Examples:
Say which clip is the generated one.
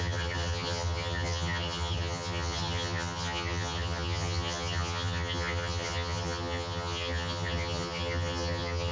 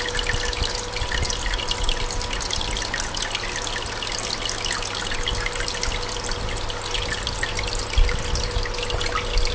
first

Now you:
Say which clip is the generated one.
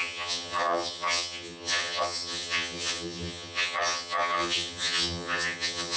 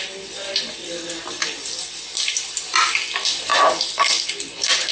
first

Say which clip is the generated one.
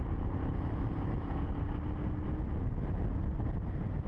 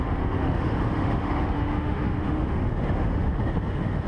second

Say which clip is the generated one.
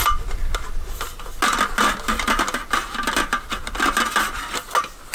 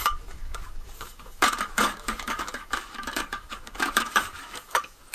second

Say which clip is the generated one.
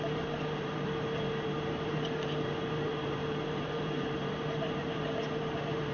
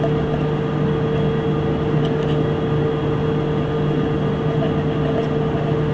first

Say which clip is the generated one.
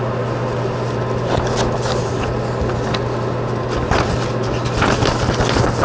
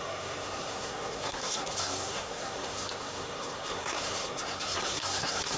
second